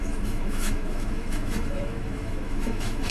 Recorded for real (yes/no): no